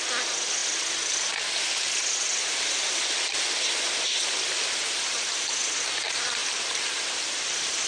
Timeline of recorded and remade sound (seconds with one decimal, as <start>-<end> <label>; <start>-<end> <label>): 0.0-6.4 recorded; 6.4-7.9 remade